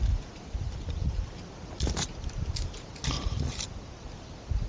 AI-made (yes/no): no